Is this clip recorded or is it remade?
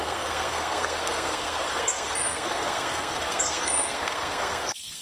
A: remade